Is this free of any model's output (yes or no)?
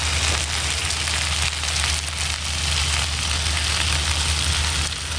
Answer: yes